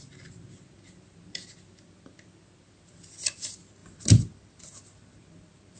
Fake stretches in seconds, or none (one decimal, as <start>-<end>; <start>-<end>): 3.8-4.6